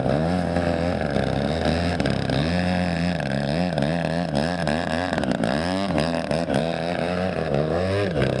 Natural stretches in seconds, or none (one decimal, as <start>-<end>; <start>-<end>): 0.0-8.4